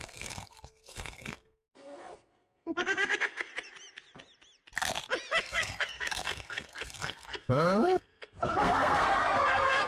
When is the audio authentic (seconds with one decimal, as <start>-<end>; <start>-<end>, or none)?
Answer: 3.5-5.4